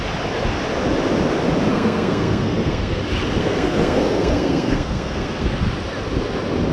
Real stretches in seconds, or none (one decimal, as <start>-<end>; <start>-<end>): 0.0-1.7; 3.0-3.4; 5.6-6.7